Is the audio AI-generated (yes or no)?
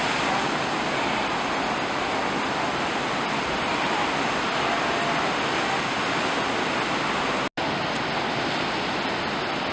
no